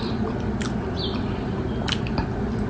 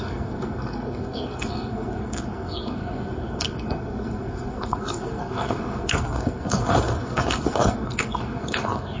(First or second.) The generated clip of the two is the second